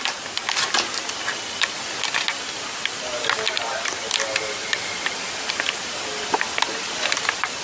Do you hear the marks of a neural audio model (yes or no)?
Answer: no